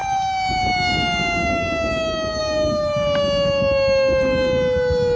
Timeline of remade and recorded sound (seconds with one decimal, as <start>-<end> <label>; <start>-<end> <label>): 0.0-5.2 recorded

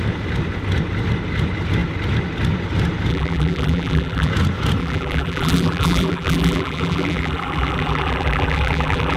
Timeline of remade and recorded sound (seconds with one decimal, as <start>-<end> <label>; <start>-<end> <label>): 0.0-3.1 recorded; 3.1-4.3 remade; 4.3-4.8 recorded; 4.8-9.2 remade

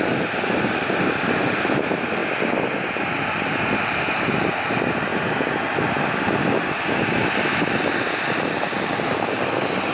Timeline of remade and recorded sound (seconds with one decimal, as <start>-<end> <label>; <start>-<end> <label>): 0.0-2.2 remade; 2.2-2.8 recorded; 2.8-5.1 remade; 5.1-9.4 recorded; 9.4-9.9 remade

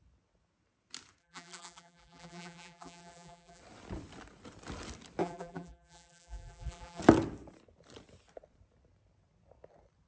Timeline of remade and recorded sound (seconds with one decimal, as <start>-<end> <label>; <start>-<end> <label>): 0.0-1.2 recorded; 1.2-3.6 remade; 3.6-5.2 recorded; 5.2-7.0 remade; 7.0-10.1 recorded